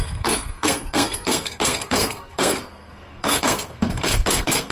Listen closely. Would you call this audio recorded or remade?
remade